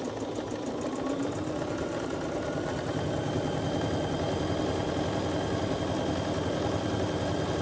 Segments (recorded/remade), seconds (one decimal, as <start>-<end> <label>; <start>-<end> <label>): 0.0-7.6 recorded